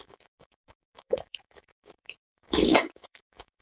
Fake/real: fake